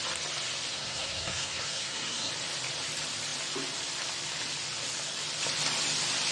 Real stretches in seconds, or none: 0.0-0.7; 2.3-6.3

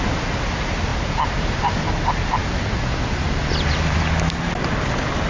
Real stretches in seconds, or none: 0.0-0.9; 1.9-5.3

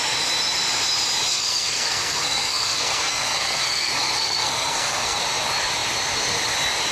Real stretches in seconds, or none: 0.0-1.3; 5.2-6.9

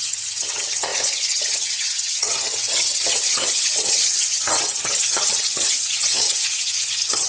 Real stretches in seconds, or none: none

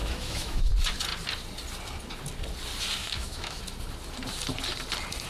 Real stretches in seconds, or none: 0.7-3.0; 3.6-5.3

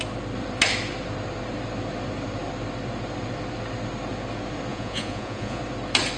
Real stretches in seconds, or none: 0.0-4.7; 5.6-6.2